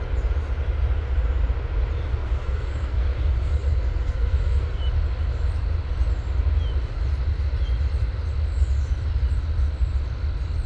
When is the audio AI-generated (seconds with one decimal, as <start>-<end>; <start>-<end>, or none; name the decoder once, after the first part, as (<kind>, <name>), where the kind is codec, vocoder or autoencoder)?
2.1-4.8 (codec, SNAC)